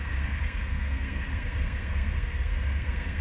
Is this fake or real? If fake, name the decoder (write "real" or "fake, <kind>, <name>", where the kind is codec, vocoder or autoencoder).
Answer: fake, codec, SNAC